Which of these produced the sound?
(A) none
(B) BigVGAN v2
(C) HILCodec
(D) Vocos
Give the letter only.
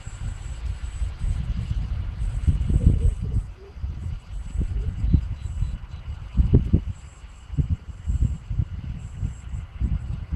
B